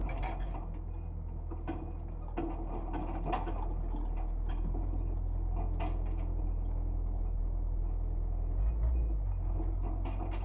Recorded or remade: recorded